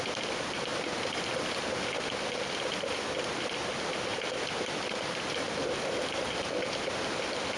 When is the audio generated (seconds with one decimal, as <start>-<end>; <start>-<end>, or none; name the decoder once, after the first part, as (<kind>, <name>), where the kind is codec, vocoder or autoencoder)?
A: none